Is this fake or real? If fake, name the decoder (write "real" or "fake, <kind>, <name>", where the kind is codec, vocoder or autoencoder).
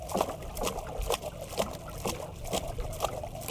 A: real